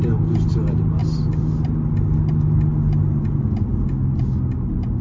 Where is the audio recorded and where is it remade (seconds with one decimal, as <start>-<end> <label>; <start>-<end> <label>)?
0.0-5.0 recorded